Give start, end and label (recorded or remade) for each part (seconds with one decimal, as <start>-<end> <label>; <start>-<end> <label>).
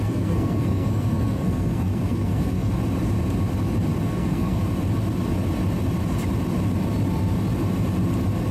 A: 0.0-2.8 remade; 2.8-4.1 recorded; 4.1-4.6 remade; 4.6-8.5 recorded